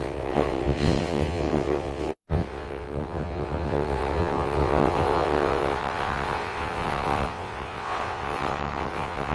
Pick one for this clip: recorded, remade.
remade